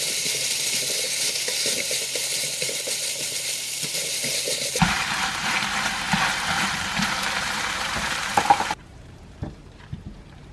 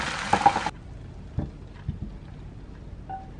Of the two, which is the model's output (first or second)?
first